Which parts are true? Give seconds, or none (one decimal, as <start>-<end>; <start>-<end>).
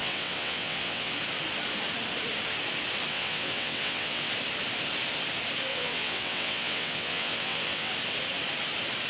1.1-3.1; 4.3-5.7; 7.9-9.1